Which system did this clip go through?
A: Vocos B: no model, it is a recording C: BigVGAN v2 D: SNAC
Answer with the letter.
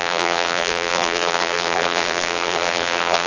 C